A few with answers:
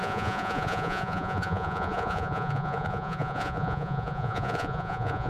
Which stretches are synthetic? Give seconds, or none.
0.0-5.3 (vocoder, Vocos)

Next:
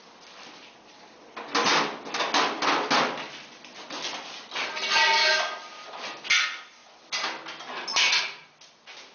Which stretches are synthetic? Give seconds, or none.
none

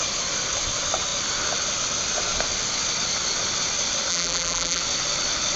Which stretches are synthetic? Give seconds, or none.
4.1-4.8 (vocoder, BigVGAN v2)

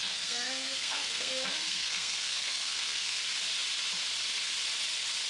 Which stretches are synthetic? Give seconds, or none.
0.0-3.2 (codec, SNAC)